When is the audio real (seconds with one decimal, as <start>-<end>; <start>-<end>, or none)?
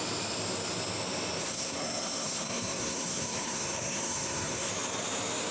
0.0-1.4; 4.7-5.5